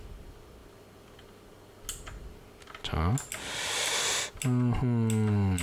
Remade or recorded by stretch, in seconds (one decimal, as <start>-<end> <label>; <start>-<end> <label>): 0.0-5.6 recorded